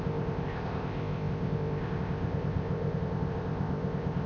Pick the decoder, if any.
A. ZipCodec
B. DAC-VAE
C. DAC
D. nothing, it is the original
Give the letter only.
A